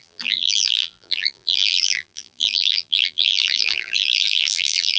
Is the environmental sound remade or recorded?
remade